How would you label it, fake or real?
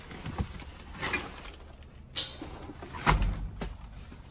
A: real